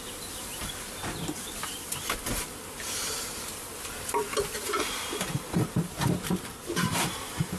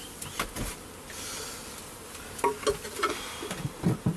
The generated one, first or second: first